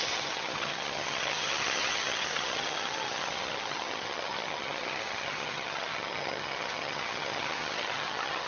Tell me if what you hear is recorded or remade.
remade